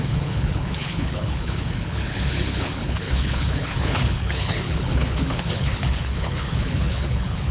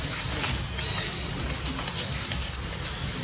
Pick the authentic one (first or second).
second